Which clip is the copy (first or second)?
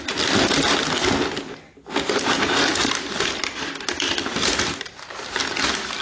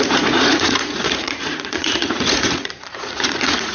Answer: second